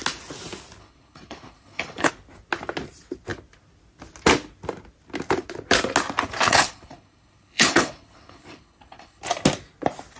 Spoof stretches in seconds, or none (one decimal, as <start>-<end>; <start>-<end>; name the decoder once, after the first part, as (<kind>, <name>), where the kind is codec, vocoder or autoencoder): 0.8-2.1 (codec, HILCodec); 6.5-9.2